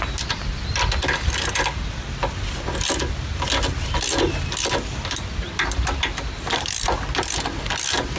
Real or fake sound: real